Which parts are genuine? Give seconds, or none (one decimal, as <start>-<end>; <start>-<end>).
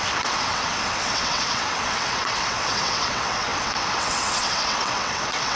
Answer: none